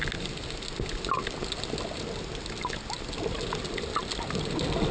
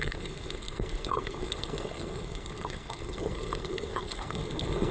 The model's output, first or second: second